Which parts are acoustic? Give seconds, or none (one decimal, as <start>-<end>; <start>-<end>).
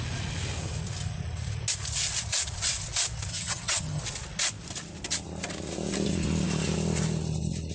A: 0.0-3.3; 4.0-7.7